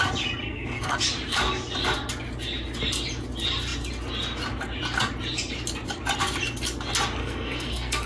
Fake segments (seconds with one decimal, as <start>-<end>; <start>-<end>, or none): 0.4-1.0; 7.2-8.1

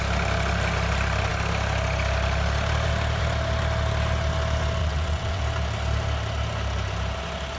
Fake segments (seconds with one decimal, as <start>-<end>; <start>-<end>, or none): 4.8-5.4